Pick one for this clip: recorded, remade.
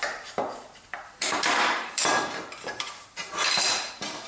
remade